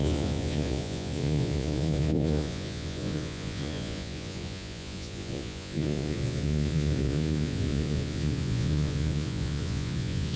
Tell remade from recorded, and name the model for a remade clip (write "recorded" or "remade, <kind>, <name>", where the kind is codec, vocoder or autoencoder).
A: remade, vocoder, Vocos